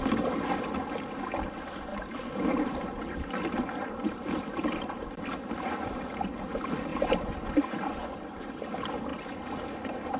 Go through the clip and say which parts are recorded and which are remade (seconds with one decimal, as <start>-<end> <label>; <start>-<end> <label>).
0.0-1.9 recorded; 1.9-5.5 remade; 5.5-6.9 recorded; 6.9-7.6 remade; 7.6-9.1 recorded; 9.1-10.2 remade